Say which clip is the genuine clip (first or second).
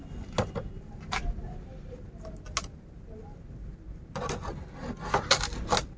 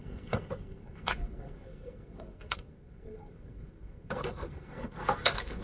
first